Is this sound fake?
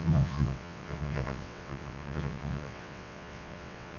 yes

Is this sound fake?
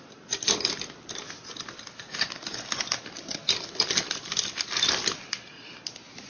no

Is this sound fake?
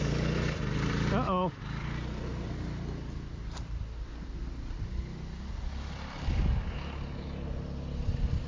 no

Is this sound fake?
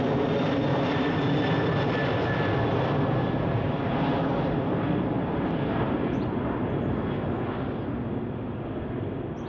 no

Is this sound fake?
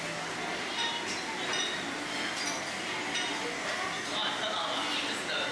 no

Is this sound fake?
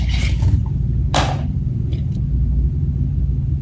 no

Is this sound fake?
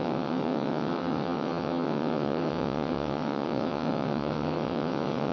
yes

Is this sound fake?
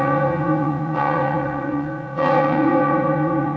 yes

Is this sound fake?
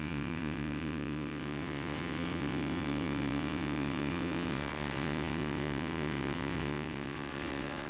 yes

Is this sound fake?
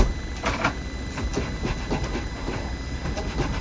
no